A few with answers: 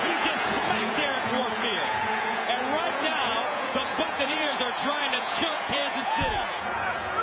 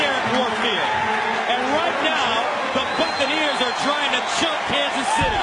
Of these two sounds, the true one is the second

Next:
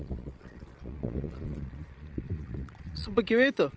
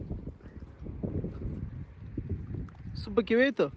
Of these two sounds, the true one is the second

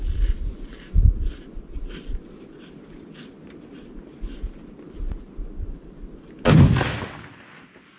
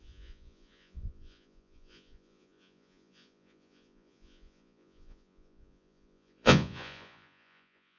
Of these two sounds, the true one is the first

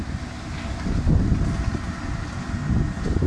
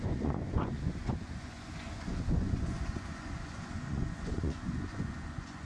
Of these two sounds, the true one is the first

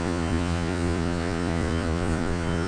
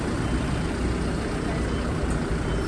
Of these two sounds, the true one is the second